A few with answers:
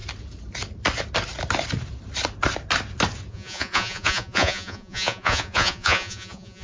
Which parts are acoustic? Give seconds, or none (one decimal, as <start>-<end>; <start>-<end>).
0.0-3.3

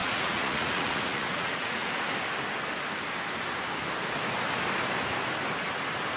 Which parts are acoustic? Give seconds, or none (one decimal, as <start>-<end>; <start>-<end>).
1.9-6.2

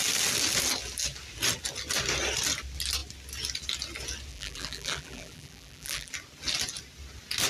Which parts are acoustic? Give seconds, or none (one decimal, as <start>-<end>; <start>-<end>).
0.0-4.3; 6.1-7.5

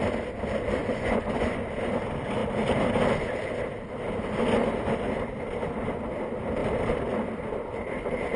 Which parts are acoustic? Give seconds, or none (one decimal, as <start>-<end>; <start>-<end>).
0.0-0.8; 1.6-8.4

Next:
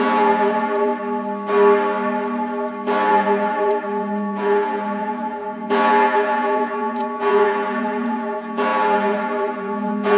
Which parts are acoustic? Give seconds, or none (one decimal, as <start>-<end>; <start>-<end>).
0.9-3.1

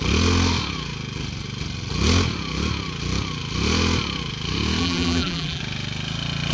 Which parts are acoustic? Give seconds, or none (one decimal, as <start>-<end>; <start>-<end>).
0.0-4.8; 5.6-6.5